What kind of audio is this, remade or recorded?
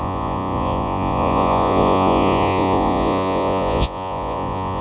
remade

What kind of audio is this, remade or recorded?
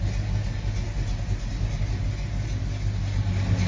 recorded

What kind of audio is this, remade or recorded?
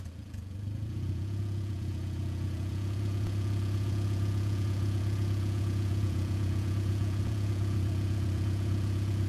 remade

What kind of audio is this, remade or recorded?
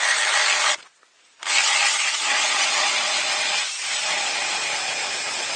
recorded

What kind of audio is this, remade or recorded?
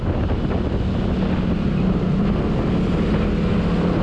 recorded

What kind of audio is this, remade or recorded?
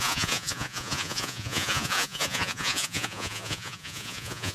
remade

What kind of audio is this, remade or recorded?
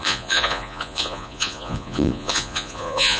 remade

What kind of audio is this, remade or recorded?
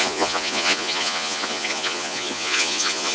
remade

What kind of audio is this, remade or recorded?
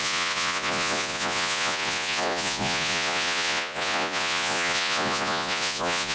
remade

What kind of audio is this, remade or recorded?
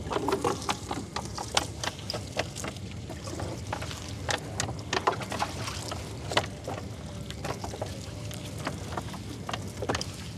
recorded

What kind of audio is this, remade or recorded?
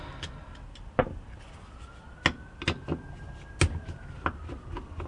recorded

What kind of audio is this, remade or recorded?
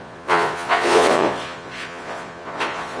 remade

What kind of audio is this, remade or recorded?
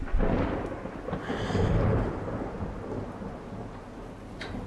recorded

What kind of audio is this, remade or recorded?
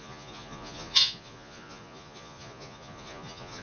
remade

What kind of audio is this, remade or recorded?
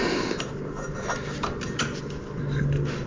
recorded